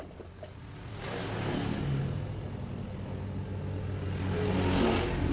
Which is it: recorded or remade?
recorded